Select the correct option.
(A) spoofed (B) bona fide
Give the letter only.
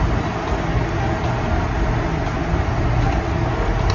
B